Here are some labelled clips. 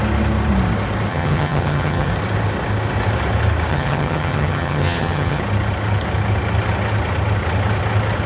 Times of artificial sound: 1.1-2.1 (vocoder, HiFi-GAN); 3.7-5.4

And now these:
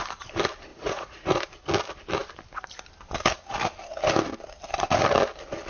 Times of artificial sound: 0.7-1.4 (vocoder, Vocos)

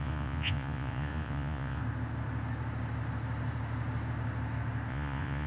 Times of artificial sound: 0.0-1.8 (vocoder, Vocos); 4.9-5.5

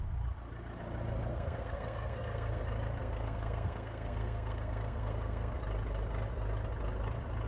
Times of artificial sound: 1.3-2.6 (codec, SNAC); 3.0-5.6

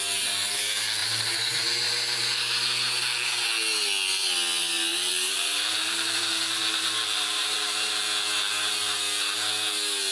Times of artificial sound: 1.0-2.3 (vocoder, BigVGAN v2); 4.9-7.9